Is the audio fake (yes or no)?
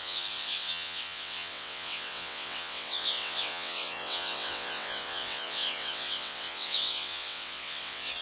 yes